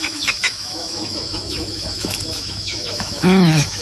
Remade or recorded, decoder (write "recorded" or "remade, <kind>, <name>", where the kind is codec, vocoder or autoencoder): remade, autoencoder, DAC-VAE